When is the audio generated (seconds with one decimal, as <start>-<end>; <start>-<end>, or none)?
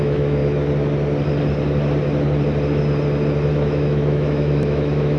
0.0-0.4; 3.5-5.2